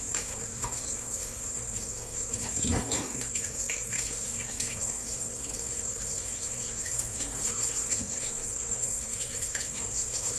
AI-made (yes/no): yes